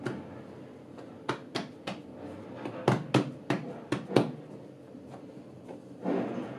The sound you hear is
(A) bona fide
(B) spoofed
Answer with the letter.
A